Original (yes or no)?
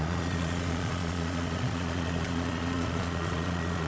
no